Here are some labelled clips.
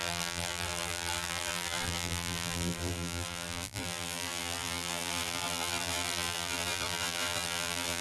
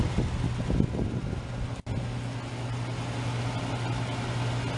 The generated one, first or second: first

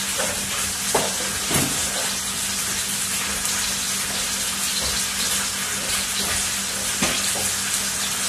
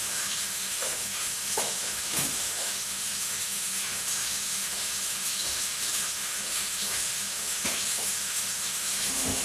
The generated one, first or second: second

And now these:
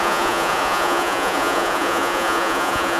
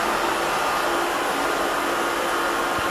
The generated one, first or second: first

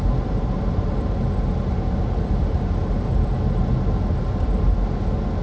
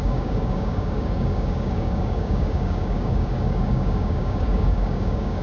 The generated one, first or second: second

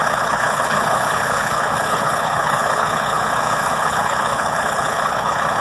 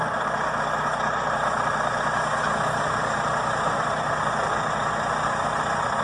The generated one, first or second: first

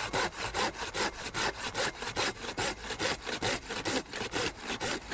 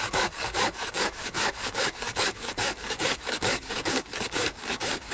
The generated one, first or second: second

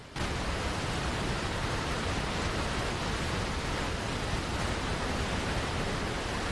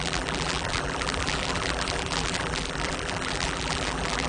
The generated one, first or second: second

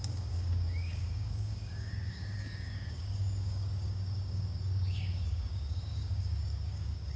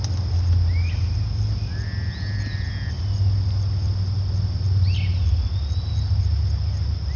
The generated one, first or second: first